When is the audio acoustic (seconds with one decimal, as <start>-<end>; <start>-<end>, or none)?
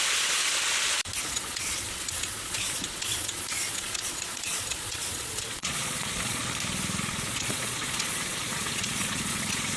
0.4-1.2; 6.4-7.0